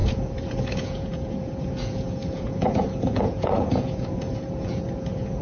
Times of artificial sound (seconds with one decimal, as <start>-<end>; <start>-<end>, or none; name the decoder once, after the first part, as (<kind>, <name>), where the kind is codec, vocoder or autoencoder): 0.0-5.4 (vocoder, Vocos)